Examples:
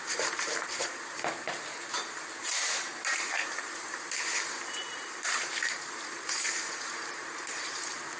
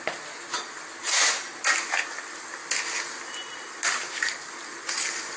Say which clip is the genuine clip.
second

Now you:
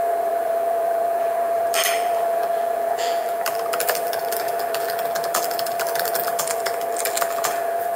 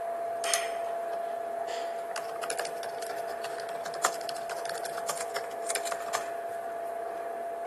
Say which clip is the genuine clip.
second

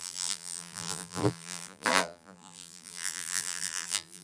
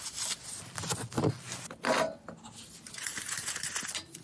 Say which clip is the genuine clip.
second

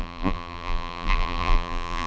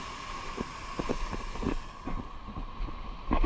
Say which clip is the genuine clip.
second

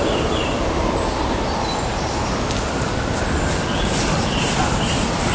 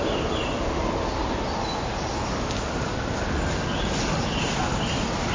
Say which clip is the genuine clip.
second